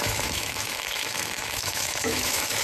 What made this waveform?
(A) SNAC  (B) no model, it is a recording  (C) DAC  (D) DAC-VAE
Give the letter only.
D